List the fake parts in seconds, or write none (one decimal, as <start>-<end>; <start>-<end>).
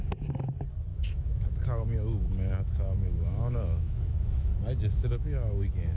0.9-4.5; 5.0-6.0